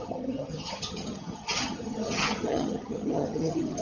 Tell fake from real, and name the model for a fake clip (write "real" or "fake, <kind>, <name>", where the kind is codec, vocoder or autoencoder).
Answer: fake, vocoder, HiFi-GAN